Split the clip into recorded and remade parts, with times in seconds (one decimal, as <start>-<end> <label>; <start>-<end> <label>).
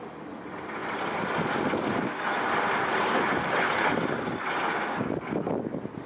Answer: 0.0-0.8 recorded; 0.8-4.5 remade; 4.5-6.1 recorded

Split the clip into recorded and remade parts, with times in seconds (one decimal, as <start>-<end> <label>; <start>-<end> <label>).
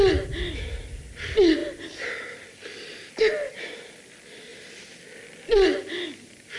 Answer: 0.0-6.6 recorded